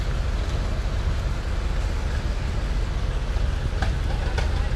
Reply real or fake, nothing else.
real